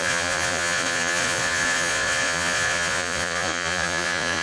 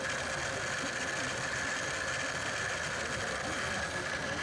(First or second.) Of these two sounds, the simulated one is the first